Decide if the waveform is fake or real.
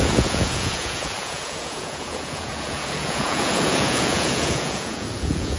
fake